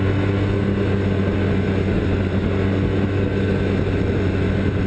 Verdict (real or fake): real